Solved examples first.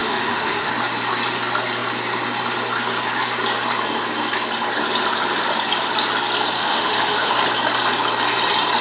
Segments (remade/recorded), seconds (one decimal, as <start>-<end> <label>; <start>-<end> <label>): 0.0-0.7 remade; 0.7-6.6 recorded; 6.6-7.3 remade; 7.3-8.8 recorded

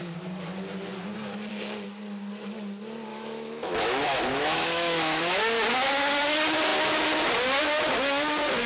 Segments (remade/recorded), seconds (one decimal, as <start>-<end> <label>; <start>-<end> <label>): 0.0-3.1 recorded; 3.1-5.4 remade; 5.4-8.7 recorded

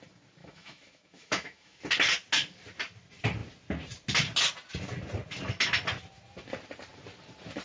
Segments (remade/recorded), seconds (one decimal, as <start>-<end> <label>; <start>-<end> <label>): 0.0-0.4 recorded; 0.4-1.8 remade; 1.8-7.6 recorded

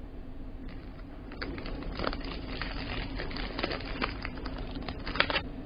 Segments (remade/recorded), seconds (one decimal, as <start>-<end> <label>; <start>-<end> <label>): 0.0-5.7 recorded

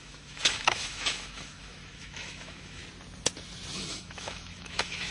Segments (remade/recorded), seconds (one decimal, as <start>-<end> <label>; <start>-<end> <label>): 0.0-2.8 remade; 2.8-3.9 recorded; 3.9-5.1 remade

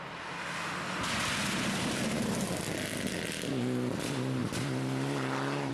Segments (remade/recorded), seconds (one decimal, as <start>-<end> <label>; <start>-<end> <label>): 0.0-5.7 recorded

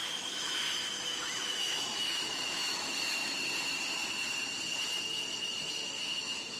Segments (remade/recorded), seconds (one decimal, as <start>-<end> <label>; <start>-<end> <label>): 0.0-3.2 remade; 3.2-5.6 recorded; 5.6-6.6 remade